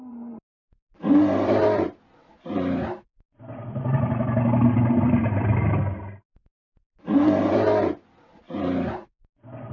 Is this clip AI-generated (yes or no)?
no